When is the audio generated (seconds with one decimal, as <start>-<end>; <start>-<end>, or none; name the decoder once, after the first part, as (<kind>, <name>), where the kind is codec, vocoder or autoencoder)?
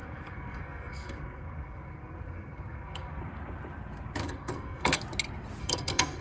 0.0-3.2 (codec, SNAC); 4.2-5.0; 5.6-6.2